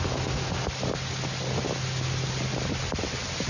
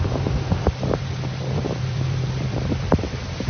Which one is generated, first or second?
second